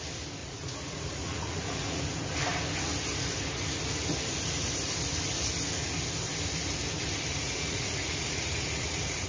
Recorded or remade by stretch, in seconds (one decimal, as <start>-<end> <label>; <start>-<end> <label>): 0.0-0.4 recorded; 0.4-2.0 remade; 2.0-7.3 recorded; 7.3-9.3 remade